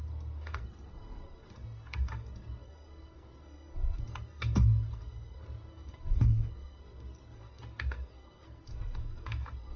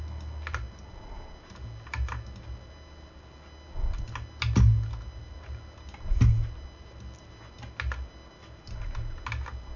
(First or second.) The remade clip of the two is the first